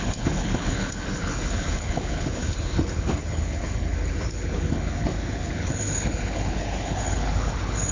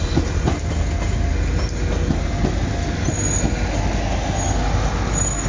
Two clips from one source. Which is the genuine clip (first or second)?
second